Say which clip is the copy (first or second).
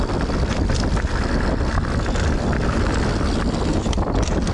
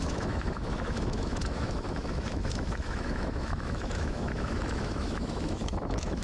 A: second